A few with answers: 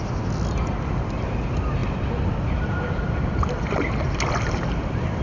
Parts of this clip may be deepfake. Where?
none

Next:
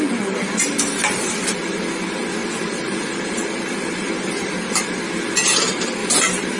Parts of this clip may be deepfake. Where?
2.4-4.8 (vocoder, BigVGAN v2); 6.0-6.6

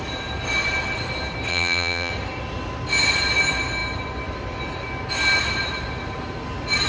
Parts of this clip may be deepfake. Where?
1.5-2.1 (vocoder, BigVGAN v2)

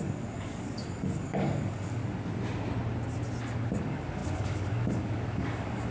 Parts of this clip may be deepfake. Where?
0.0-2.0 (codec, DAC); 3.4-5.9

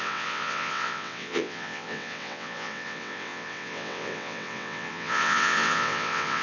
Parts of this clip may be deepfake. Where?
0.0-6.4 (vocoder, WaveNeXt)

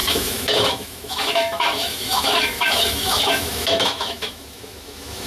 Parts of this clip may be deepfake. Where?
0.0-5.3 (autoencoder, DAC-VAE)